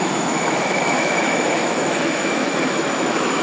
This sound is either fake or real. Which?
fake